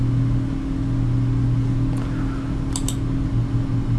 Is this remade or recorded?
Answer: recorded